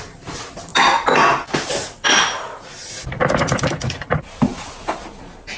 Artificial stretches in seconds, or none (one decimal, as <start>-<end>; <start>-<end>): none